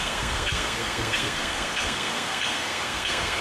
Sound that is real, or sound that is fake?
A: fake